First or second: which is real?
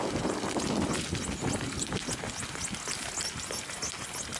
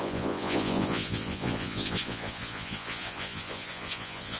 first